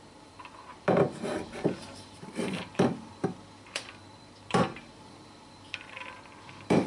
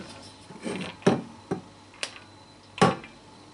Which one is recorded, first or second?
second